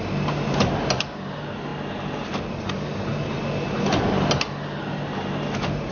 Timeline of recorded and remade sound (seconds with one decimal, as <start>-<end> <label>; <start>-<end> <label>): 0.0-5.9 recorded